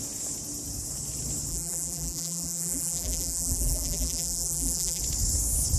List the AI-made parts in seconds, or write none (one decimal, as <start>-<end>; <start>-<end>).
1.5-5.0